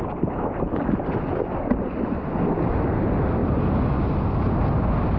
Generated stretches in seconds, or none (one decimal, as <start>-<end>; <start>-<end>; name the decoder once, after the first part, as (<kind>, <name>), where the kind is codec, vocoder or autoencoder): none